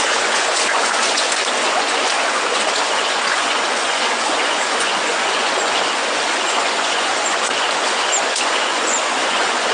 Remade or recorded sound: remade